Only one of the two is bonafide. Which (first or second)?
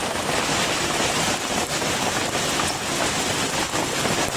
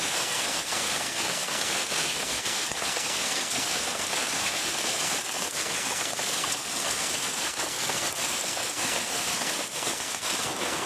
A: first